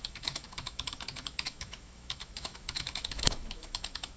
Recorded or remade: remade